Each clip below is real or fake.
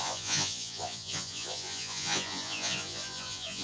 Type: fake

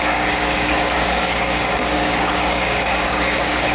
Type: fake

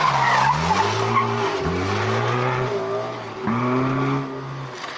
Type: real